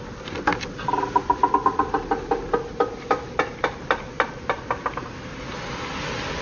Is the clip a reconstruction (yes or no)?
no